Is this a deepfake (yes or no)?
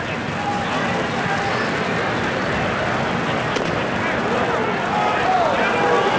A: no